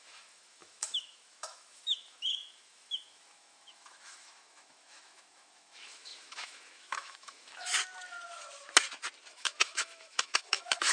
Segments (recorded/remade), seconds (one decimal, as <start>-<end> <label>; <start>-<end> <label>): 0.0-7.7 remade; 7.7-9.3 recorded; 9.3-10.9 remade